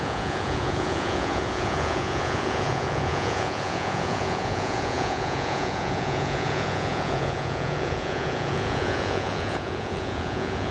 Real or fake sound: fake